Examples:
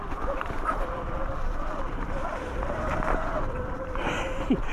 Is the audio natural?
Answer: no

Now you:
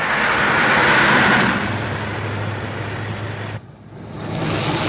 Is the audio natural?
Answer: yes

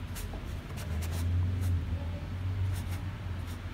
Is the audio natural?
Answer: yes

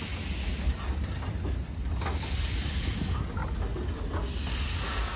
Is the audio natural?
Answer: yes